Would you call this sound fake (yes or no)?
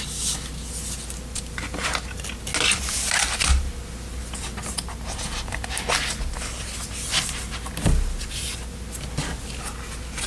no